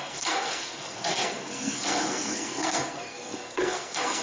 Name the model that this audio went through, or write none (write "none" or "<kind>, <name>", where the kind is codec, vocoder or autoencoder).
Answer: codec, SNAC